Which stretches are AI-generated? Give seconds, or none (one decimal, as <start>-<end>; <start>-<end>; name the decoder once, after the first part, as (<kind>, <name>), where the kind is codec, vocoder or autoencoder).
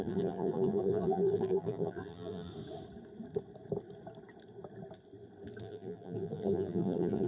0.0-2.5 (vocoder, BigVGAN v2); 5.6-7.3